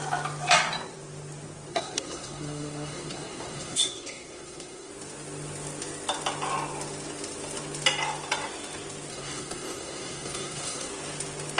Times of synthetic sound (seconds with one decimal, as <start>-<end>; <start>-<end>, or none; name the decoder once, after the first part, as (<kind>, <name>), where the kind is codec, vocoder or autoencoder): 1.7-4.9 (codec, SNAC); 9.1-10.9